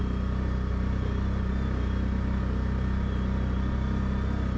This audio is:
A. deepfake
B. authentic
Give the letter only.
B